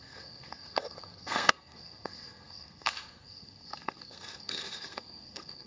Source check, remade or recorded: remade